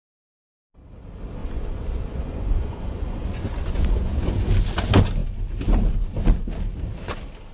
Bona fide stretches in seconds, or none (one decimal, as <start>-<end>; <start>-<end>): 0.0-1.4; 4.5-7.5